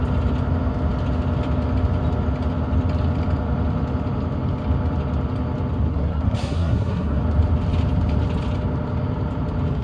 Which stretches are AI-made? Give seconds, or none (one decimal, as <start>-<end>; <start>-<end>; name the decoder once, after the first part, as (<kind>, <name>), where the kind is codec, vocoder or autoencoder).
5.9-7.2 (codec, SNAC)